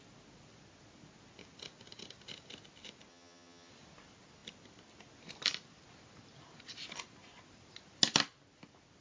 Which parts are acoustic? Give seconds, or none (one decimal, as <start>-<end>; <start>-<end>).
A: 0.0-3.1; 3.7-9.0